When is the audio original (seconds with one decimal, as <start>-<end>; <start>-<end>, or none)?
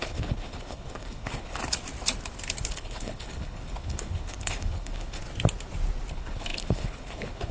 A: 1.6-2.7; 5.2-6.1